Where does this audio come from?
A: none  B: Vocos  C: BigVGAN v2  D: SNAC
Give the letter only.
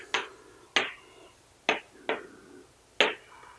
A